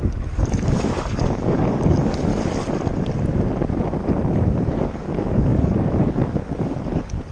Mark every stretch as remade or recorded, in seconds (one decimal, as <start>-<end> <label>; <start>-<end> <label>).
0.0-2.3 remade; 2.3-4.7 recorded; 4.7-7.3 remade